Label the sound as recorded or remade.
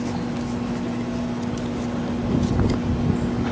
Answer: recorded